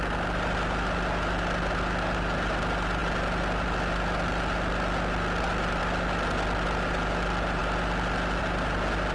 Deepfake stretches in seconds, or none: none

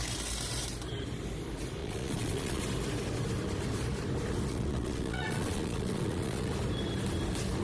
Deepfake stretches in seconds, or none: 1.8-2.6 (vocoder, Vocos); 4.5-6.5

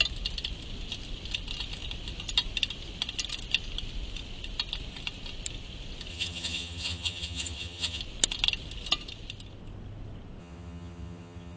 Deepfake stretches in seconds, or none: 6.1-8.0 (vocoder, HiFi-GAN); 10.4-11.6

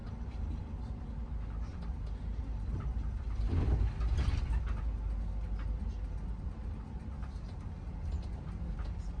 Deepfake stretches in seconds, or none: 0.0-0.8 (vocoder, BigVGAN v2); 1.7-3.8

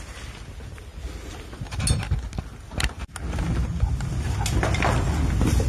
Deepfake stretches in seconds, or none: none

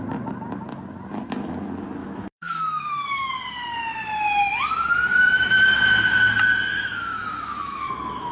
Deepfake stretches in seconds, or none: 2.0-3.3 (autoencoder, DAC-VAE); 5.1-5.6; 6.7-8.3

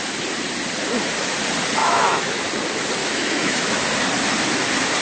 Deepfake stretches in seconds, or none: 1.8-2.4 (autoencoder, DAC-VAE); 3.0-3.8

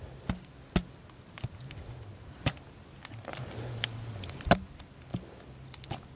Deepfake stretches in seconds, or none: none